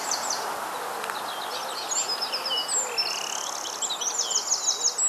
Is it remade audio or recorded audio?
recorded